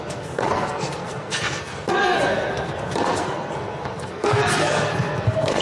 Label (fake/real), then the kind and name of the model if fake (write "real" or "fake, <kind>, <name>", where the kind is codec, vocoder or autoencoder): fake, codec, SNAC